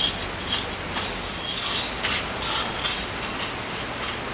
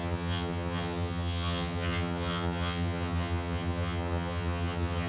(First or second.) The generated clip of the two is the second